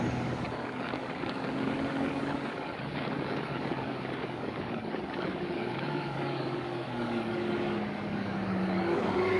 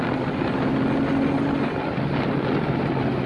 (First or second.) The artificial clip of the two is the first